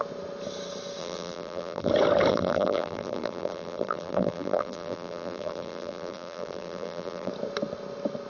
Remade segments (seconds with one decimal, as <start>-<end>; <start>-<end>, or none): 1.0-1.9; 2.3-7.3